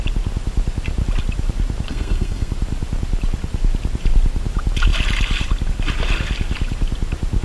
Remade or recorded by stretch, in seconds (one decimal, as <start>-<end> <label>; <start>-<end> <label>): 0.0-1.9 recorded; 1.9-2.5 remade; 2.5-7.4 recorded